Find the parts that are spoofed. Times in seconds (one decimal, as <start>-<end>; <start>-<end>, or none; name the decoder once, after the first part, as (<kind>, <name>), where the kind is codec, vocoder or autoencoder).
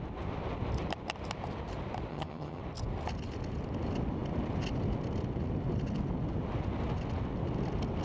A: 2.1-2.6 (vocoder, HiFi-GAN)